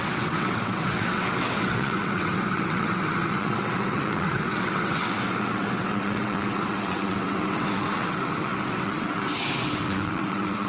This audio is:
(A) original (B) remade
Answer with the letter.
B